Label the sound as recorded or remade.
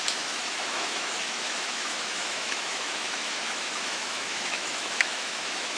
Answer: remade